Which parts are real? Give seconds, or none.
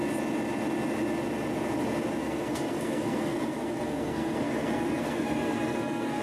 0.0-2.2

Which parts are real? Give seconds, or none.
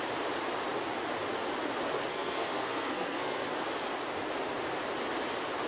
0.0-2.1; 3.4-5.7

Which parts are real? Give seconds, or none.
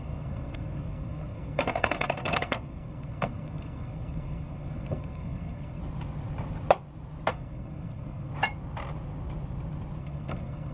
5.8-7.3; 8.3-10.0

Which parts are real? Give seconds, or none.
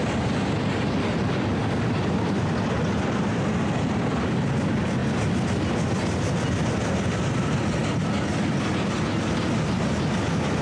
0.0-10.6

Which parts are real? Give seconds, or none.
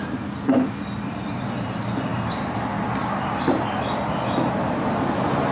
0.0-5.5